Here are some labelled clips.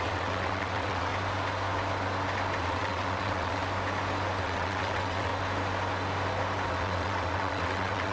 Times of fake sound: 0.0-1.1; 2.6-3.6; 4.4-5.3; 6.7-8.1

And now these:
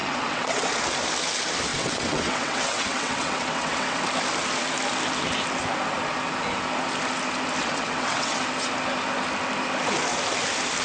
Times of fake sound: 0.0-0.7; 1.7-4.0; 7.6-8.4

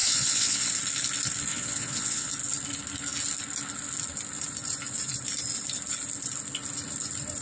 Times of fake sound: 0.0-0.7; 1.5-2.3

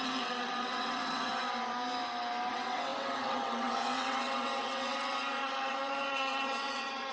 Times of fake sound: 0.0-1.3; 2.5-7.1

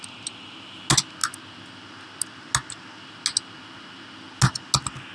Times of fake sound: none